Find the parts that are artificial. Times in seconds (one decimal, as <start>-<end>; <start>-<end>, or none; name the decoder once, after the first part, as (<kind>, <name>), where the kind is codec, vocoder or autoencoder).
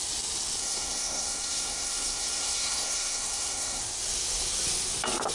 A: 0.6-3.8 (codec, SNAC)